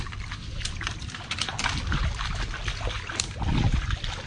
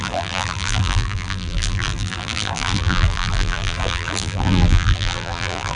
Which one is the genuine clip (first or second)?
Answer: first